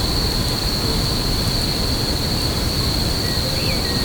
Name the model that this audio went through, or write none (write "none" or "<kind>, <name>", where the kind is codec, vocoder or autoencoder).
none